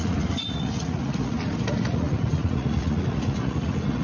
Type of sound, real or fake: fake